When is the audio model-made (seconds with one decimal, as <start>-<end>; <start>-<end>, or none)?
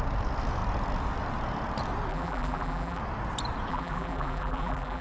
2.1-3.0; 3.7-5.0